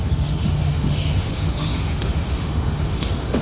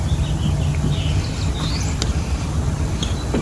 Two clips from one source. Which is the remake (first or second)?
first